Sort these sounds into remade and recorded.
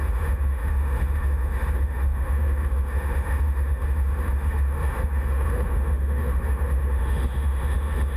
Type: remade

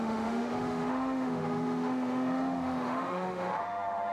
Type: remade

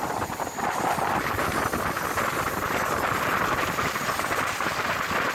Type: recorded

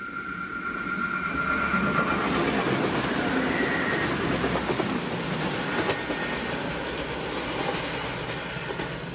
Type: recorded